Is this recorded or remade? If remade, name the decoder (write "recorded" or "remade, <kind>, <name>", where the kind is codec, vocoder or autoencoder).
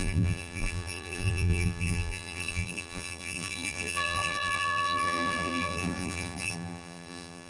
remade, vocoder, BigVGAN v2